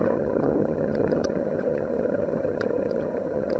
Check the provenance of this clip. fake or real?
fake